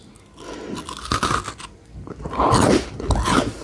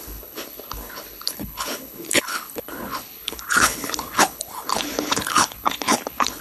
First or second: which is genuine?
first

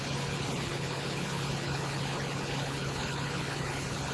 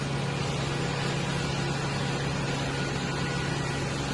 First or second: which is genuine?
second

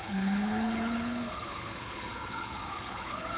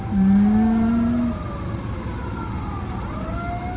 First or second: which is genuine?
second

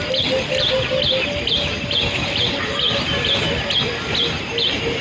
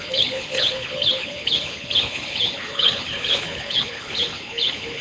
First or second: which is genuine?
first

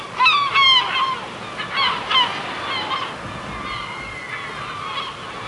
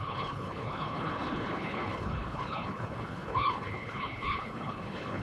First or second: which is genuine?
first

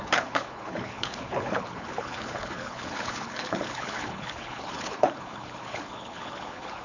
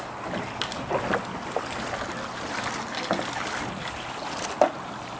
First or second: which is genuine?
second